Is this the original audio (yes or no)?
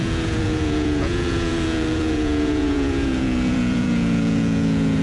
no